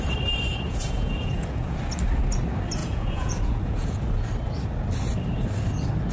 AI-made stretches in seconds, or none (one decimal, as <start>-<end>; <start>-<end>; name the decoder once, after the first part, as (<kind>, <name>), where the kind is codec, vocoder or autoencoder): 0.5-1.8 (vocoder, Vocos); 2.8-4.0